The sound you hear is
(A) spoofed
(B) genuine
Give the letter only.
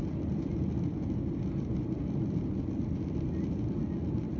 B